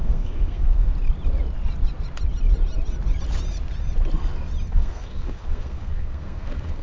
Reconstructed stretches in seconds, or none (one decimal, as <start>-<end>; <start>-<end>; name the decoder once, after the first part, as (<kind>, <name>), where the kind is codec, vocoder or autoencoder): 0.0-0.9 (codec, SNAC); 4.7-6.8